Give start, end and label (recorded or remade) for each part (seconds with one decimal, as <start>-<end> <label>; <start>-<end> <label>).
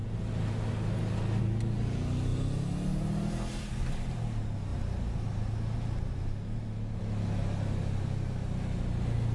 0.0-9.3 recorded